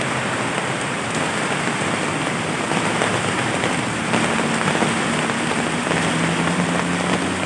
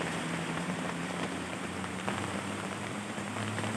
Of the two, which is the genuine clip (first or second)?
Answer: first